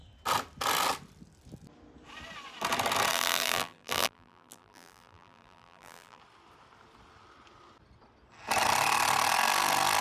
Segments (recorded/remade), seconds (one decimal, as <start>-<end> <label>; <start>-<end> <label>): 0.0-3.1 recorded; 3.1-6.2 remade; 6.2-10.0 recorded